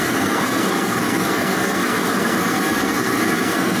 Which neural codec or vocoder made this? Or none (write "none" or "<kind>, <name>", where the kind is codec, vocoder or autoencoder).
codec, SNAC